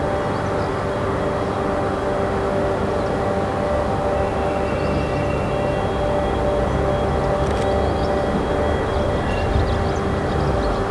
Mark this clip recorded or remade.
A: recorded